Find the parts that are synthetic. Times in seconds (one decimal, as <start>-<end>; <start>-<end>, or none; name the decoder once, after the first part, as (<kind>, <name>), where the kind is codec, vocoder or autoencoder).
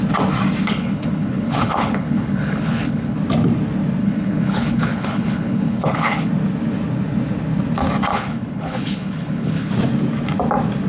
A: 0.6-3.2 (codec, HILCodec); 4.0-6.3; 8.1-9.7